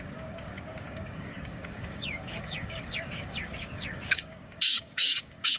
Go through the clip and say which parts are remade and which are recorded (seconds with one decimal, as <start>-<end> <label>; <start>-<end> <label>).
0.0-5.6 remade